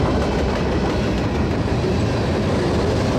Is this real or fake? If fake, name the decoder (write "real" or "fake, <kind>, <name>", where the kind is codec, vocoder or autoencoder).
real